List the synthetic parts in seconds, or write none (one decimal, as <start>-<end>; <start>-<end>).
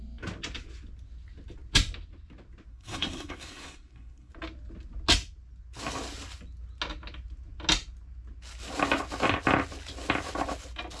2.7-4.3